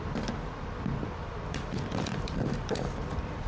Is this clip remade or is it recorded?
remade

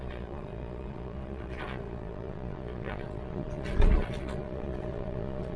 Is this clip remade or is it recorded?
remade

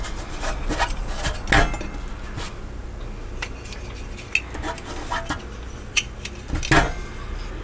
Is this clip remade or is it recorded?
recorded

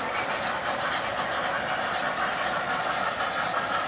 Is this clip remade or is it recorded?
recorded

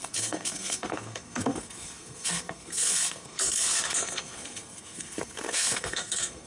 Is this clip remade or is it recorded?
remade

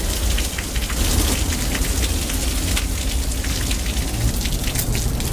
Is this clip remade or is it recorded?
recorded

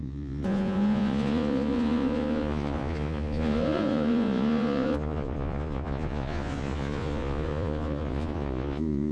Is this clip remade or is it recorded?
remade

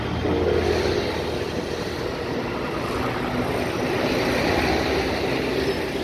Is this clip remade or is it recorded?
recorded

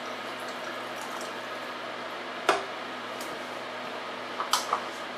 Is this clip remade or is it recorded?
recorded